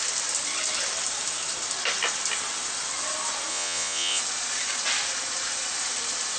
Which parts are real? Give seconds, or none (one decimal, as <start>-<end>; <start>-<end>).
0.0-3.5; 4.2-6.4